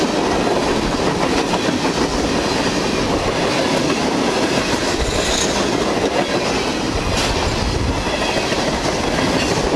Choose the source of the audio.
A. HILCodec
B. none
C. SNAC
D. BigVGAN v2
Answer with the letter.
B